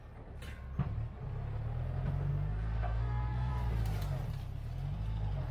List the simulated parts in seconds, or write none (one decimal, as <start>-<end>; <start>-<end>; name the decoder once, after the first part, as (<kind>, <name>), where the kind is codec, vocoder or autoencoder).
2.3-3.5 (codec, SNAC)